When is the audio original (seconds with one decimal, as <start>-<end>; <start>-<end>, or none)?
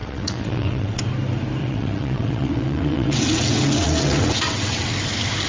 1.0-1.6; 4.9-5.5